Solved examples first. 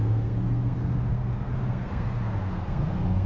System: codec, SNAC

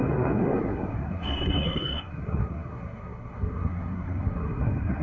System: codec, SNAC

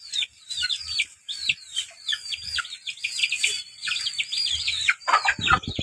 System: vocoder, BigVGAN v2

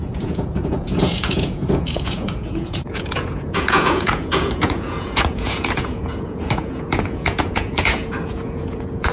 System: vocoder, Vocos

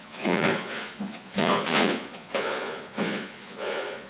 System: vocoder, Vocos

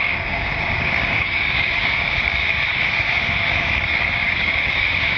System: codec, DAC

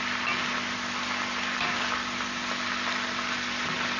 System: vocoder, BigVGAN v2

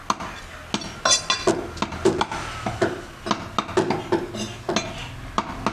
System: none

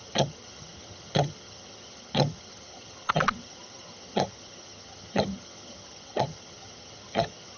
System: vocoder, HiFi-GAN